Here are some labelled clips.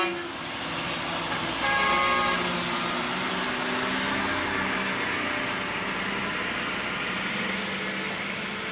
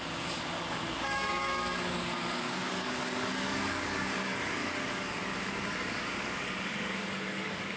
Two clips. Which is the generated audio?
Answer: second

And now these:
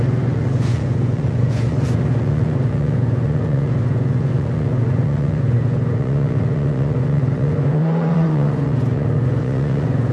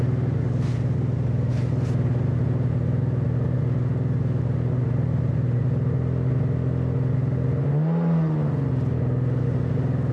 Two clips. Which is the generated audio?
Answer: first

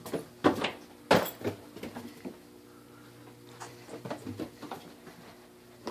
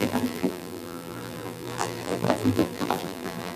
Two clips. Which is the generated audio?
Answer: second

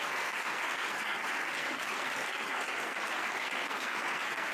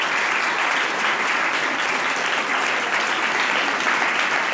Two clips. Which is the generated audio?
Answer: first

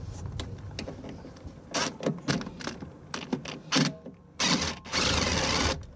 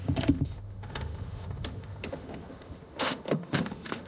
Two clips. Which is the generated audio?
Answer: second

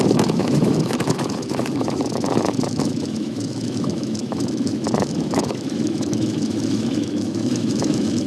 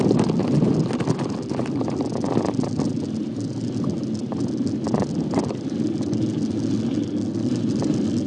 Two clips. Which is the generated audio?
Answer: first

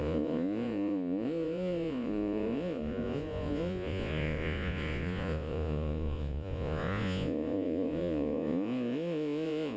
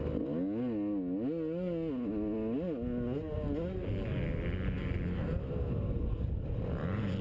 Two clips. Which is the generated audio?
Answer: first